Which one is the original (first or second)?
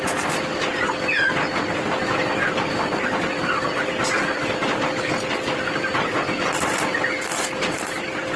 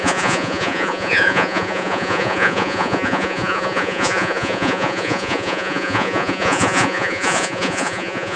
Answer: first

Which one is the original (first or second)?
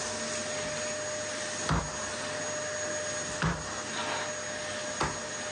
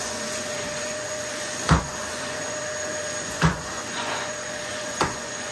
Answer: first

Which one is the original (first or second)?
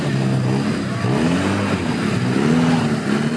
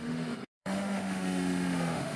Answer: first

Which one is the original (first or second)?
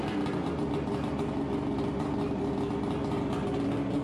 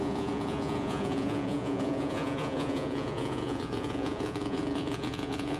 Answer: first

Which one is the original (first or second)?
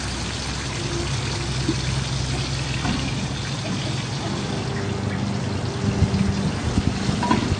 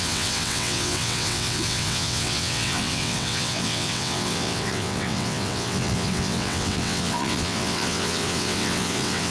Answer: first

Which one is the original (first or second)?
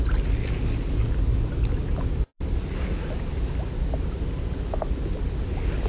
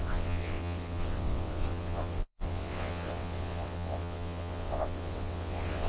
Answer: first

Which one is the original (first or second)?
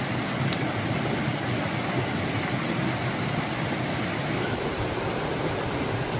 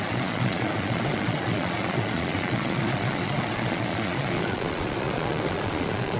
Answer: first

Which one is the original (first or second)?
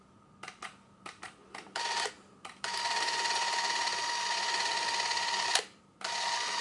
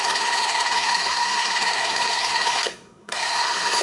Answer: first